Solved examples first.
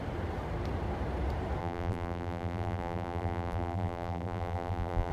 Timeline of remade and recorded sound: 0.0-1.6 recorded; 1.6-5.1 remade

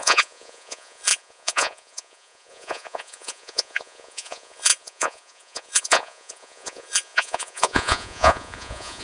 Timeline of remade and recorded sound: 0.0-9.0 remade